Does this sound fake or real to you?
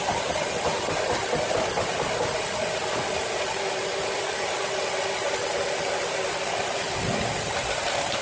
real